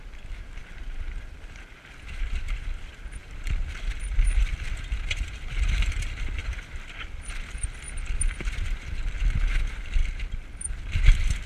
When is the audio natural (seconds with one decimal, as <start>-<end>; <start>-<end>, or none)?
10.0-10.7